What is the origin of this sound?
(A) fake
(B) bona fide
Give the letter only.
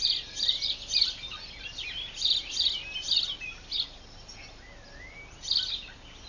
B